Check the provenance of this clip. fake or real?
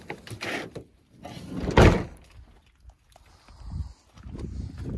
real